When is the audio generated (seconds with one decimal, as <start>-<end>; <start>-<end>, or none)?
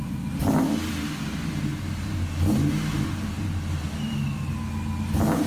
none